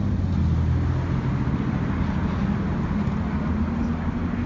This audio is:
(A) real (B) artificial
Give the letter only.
A